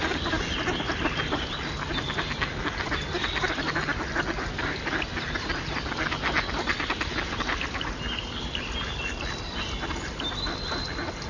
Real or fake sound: real